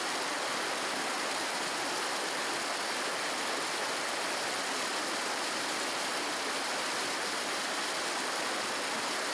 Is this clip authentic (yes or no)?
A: yes